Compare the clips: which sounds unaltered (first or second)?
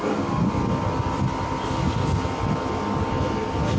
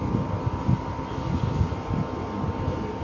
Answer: first